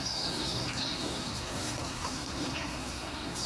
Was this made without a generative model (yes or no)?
no